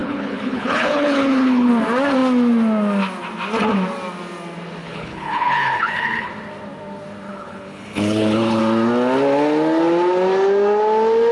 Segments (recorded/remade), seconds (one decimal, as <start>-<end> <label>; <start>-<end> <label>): 0.0-1.7 remade; 1.7-4.8 recorded; 4.8-6.3 remade; 6.3-7.3 recorded; 7.3-8.6 remade; 8.6-11.3 recorded